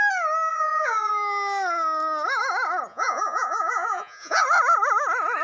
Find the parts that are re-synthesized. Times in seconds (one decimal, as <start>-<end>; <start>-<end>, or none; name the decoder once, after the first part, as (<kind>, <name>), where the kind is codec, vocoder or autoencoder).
0.5-1.1 (vocoder, Vocos); 2.9-4.4